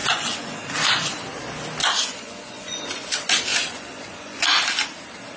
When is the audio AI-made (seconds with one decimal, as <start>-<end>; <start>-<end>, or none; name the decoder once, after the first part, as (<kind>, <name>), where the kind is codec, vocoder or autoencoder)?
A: 0.0-0.5 (vocoder, Vocos); 1.8-3.1; 3.5-4.4

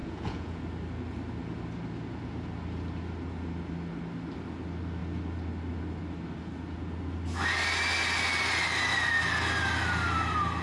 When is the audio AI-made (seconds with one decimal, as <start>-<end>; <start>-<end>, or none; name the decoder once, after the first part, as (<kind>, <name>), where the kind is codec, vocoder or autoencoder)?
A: 0.0-0.6 (vocoder, Vocos)